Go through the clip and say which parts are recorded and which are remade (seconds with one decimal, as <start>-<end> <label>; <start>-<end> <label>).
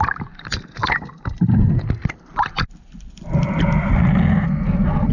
0.0-5.1 recorded